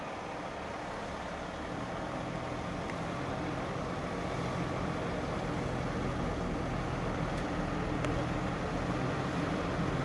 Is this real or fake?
real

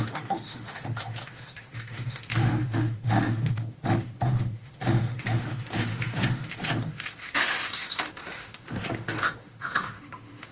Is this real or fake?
fake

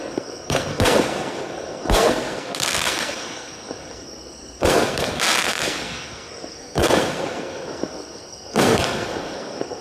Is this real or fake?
fake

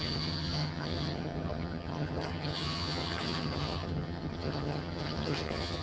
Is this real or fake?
fake